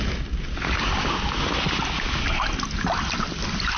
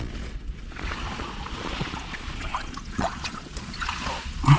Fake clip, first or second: second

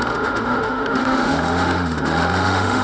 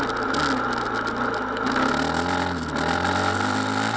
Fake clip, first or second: first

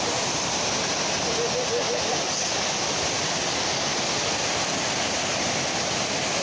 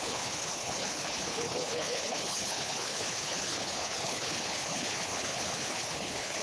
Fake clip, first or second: second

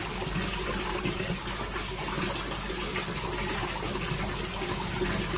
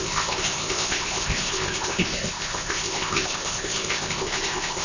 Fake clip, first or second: second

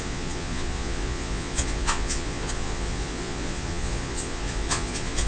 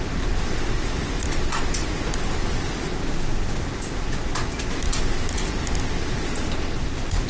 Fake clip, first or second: first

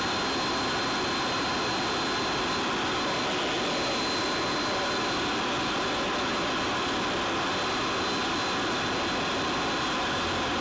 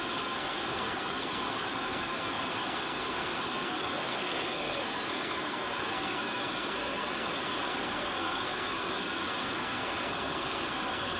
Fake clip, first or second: second